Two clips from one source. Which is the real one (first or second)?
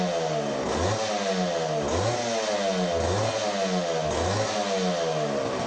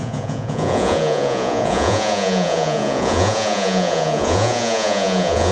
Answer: first